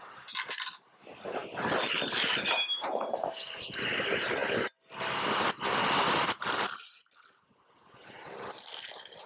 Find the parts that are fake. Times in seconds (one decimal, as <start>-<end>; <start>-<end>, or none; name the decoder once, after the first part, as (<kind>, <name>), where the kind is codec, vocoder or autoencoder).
1.4-4.0 (vocoder, BigVGAN v2)